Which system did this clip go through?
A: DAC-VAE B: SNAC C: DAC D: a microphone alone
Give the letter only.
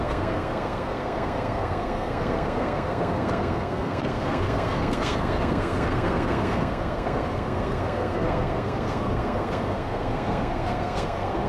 B